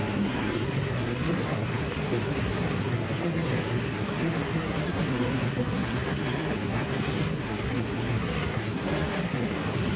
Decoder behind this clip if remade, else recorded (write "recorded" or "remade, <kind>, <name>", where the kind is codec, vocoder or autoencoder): remade, codec, SNAC